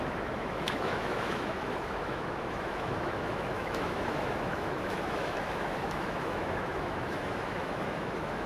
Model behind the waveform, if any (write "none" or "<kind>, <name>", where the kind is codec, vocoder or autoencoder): autoencoder, DAC-VAE